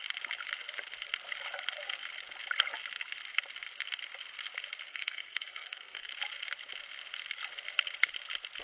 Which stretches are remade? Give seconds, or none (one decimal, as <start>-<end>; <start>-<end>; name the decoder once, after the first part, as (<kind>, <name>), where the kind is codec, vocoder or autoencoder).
4.9-6.1 (codec, SNAC)